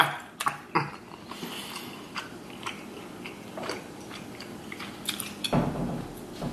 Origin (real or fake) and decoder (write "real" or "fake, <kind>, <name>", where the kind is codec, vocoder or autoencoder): real